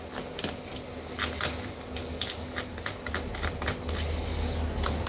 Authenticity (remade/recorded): recorded